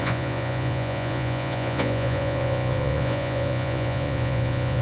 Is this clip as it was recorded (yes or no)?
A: no